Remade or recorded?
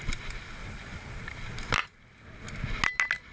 recorded